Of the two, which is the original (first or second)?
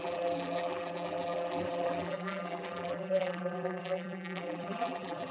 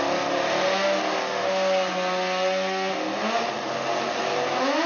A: second